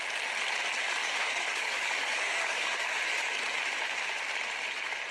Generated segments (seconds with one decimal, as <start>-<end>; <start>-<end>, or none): 1.0-3.0